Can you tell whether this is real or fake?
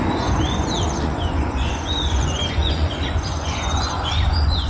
fake